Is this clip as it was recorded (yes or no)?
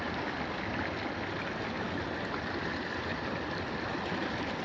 yes